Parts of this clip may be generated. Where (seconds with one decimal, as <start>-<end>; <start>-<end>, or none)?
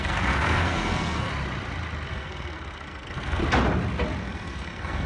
0.0-1.3; 2.1-3.4; 4.2-5.1